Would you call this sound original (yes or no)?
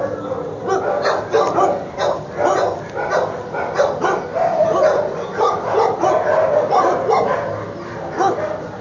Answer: yes